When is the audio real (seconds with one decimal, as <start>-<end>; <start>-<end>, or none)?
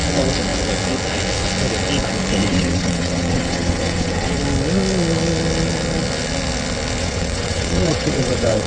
0.0-2.5; 4.4-7.0